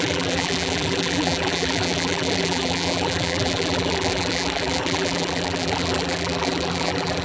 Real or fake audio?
fake